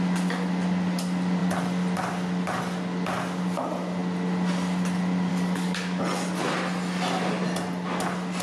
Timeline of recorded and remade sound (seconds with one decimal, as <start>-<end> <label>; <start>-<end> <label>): 0.0-5.3 recorded; 5.3-6.0 remade; 6.0-8.4 recorded